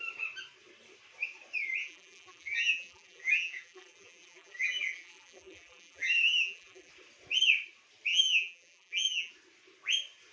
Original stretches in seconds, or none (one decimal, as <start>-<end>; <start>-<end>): 0.0-1.8; 6.9-8.1; 9.3-10.3

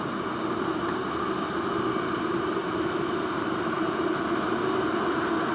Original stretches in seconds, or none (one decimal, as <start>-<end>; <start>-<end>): 0.0-2.6; 3.5-5.5

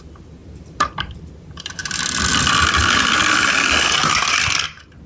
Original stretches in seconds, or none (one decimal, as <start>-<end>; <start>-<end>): 0.0-0.4; 1.3-1.8; 2.3-5.1

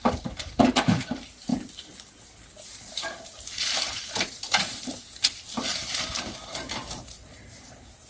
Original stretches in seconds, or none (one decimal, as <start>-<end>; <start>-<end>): 1.5-3.0